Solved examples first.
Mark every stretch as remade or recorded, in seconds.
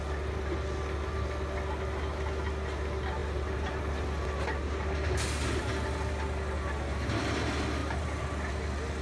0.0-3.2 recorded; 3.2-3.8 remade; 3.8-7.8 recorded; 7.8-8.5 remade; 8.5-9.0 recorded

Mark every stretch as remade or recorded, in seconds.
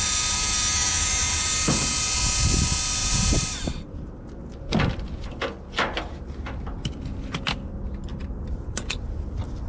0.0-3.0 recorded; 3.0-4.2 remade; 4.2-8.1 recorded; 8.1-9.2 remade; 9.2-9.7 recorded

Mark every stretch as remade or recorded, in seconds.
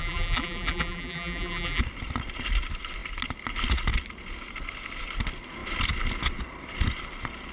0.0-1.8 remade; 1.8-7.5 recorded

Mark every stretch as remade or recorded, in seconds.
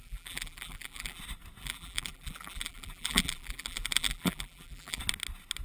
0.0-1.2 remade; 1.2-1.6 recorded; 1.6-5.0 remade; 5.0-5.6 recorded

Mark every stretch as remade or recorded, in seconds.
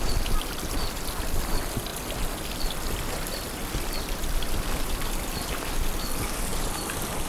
0.0-1.9 remade; 1.9-2.6 recorded; 2.6-7.3 remade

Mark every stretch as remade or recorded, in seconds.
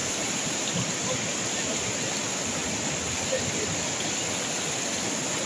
0.0-0.6 remade; 0.6-5.5 recorded